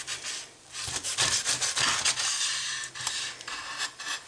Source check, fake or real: real